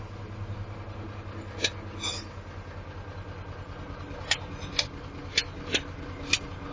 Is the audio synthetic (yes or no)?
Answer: no